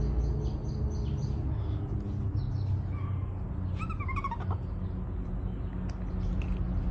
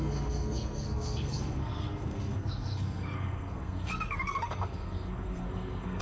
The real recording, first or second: first